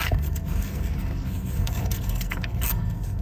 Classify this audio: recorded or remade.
remade